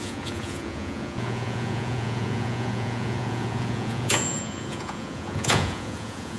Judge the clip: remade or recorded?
remade